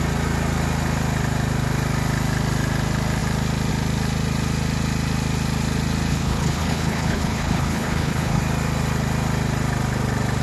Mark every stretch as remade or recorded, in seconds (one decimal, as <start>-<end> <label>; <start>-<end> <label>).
0.0-6.1 recorded; 6.1-8.4 remade; 8.4-10.4 recorded